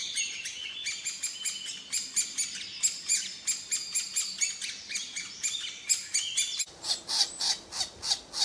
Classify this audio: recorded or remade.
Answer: recorded